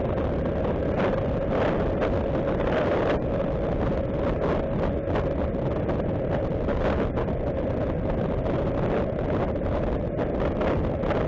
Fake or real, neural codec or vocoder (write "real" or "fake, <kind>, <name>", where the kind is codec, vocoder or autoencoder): real